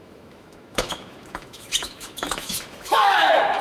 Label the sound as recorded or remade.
remade